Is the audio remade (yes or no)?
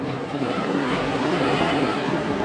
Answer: yes